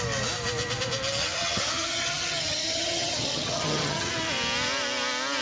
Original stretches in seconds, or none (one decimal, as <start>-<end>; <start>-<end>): 0.0-1.2; 4.1-5.4